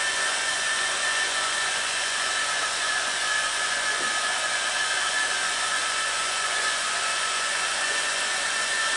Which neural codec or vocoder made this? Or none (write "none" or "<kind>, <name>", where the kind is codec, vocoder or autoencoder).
vocoder, Vocos